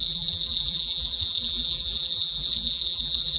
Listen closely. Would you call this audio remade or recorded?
remade